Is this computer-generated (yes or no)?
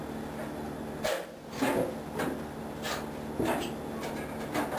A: no